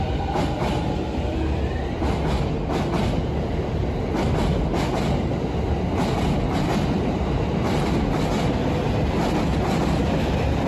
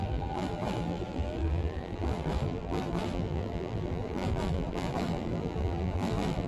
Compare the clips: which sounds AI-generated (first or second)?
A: second